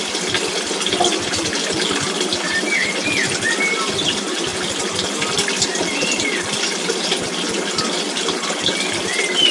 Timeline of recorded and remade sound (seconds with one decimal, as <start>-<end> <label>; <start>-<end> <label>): 0.0-9.5 recorded